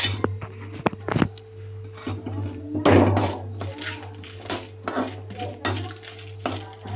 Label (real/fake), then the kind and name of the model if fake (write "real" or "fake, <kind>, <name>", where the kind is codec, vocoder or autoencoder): real